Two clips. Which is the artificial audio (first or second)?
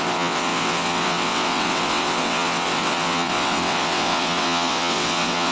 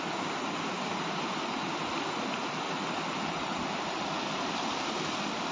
first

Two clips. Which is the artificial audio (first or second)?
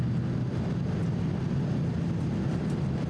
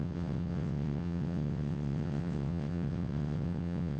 second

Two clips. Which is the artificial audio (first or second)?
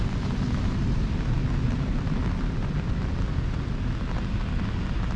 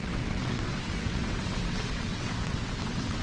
second